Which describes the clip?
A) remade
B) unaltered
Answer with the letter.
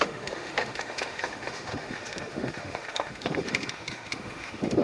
A